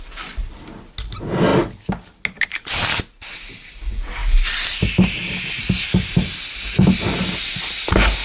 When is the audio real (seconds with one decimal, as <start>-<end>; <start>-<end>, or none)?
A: 0.0-8.2